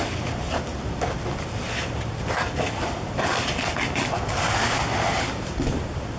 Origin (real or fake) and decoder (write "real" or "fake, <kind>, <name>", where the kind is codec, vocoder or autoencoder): real